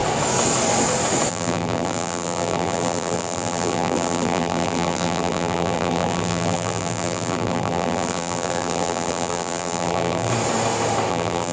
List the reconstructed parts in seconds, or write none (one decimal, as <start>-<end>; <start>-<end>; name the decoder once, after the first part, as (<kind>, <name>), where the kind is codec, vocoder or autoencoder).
1.3-10.3 (vocoder, BigVGAN v2); 11.1-11.5